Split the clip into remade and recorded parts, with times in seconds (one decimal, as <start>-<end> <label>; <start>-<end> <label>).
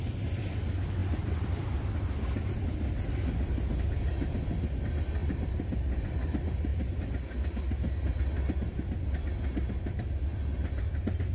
0.0-11.3 recorded